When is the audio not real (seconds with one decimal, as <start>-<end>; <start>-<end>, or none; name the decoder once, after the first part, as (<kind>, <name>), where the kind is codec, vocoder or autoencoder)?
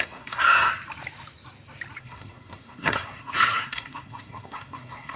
0.0-0.7 (codec, SNAC); 2.0-5.2